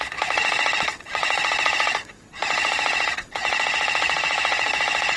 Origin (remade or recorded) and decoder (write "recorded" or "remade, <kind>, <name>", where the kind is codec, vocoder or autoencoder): remade, vocoder, Vocos